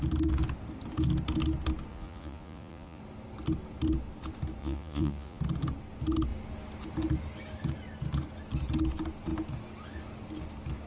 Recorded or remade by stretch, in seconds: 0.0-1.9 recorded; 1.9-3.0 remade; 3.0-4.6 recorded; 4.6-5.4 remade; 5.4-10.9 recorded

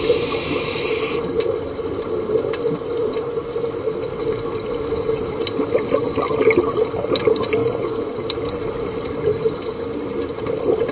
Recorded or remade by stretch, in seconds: 0.0-7.6 recorded; 7.6-8.2 remade; 8.2-10.9 recorded

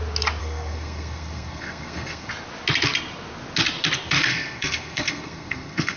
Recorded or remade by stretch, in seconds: 0.0-0.4 recorded; 0.4-2.3 remade; 2.3-4.3 recorded; 4.3-6.0 remade

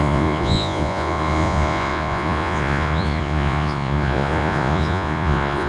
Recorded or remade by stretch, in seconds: 0.0-5.7 remade

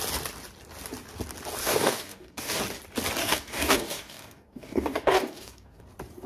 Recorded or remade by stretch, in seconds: 0.0-1.6 recorded; 1.6-2.6 remade; 2.6-3.2 recorded; 3.2-5.8 remade; 5.8-6.3 recorded